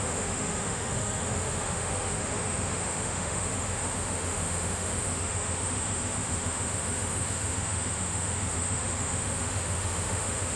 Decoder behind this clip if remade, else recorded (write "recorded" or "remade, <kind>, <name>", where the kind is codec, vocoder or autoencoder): remade, autoencoder, DAC-VAE